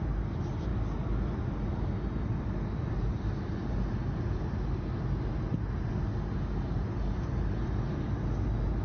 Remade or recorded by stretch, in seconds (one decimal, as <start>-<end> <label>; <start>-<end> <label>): 0.0-8.8 recorded